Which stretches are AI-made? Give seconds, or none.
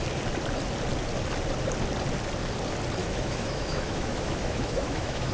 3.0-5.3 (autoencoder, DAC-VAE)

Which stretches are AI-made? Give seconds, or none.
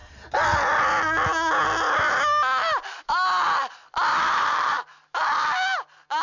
4.3-5.0 (vocoder, BigVGAN v2)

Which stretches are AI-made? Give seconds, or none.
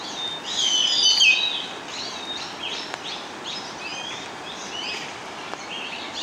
none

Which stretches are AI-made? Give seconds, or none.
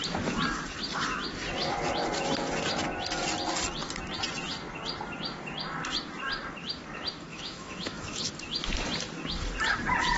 7.3-8.3 (autoencoder, DAC-VAE)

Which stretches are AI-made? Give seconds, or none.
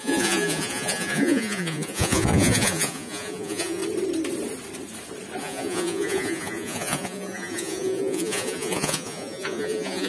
0.0-3.8 (vocoder, Vocos); 5.4-10.1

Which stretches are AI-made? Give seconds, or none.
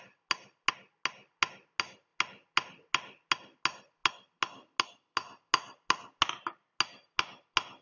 none